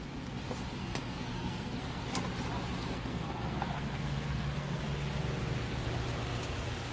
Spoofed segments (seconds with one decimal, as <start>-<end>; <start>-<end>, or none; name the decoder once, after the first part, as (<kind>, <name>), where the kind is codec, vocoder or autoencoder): 0.8-2.0 (codec, SNAC); 2.8-4.8